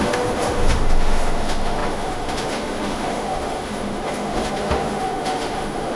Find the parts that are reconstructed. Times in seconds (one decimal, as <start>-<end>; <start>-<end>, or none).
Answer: 0.0-6.0